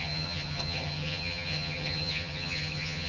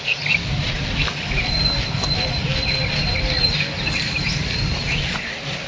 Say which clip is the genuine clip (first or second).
second